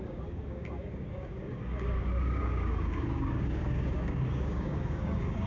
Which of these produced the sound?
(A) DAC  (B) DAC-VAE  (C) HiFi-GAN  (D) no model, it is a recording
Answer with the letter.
A